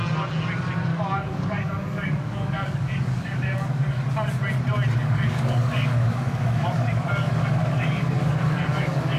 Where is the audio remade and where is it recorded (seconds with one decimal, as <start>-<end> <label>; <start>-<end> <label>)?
0.0-0.9 recorded; 0.9-4.0 remade; 4.0-5.0 recorded; 5.0-9.2 remade